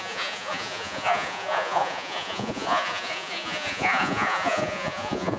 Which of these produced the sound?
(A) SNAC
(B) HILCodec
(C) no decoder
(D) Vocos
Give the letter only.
D